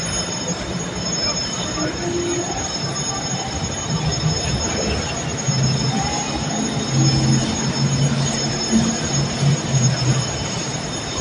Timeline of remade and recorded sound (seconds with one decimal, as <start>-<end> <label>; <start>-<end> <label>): 0.0-11.2 recorded